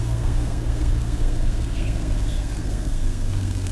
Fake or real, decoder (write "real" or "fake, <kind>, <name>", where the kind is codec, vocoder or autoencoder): fake, codec, SNAC